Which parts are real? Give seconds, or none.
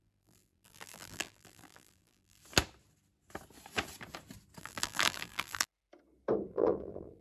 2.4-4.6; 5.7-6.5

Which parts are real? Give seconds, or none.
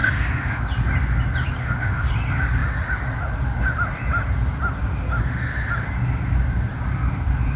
0.6-1.6; 2.1-7.6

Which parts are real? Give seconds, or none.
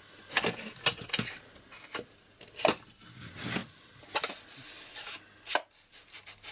0.0-6.5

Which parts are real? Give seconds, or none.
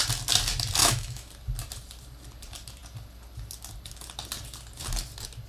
0.0-0.8; 1.3-5.5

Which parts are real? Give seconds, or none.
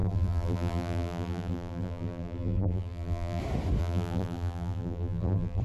3.4-3.8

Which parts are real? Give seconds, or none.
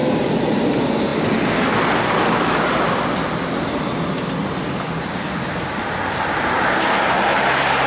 0.0-7.9